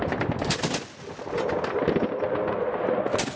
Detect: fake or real real